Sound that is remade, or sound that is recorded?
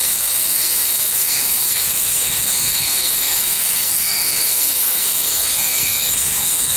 remade